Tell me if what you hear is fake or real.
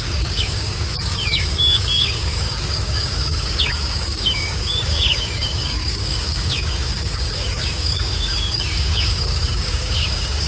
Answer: fake